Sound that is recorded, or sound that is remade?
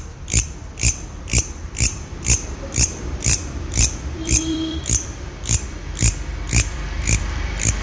remade